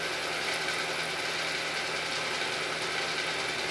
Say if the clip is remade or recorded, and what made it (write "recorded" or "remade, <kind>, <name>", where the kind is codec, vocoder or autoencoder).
recorded